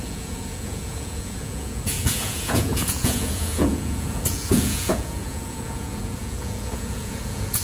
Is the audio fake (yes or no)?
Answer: yes